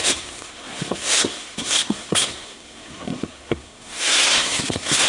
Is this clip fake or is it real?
fake